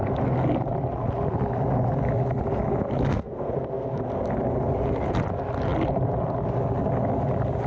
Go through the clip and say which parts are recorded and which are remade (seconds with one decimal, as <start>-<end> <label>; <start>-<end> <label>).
0.0-3.0 recorded; 3.0-4.0 remade; 4.0-7.7 recorded